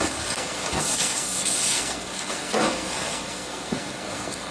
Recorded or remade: remade